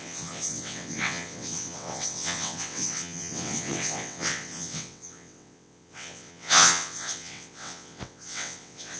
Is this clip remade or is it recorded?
remade